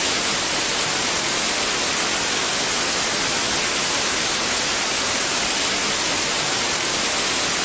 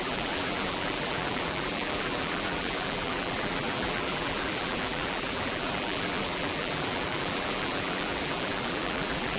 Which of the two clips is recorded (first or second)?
first